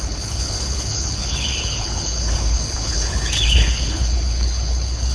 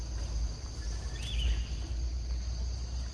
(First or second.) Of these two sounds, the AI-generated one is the first